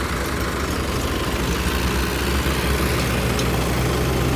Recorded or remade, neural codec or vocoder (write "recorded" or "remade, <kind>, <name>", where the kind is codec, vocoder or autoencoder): recorded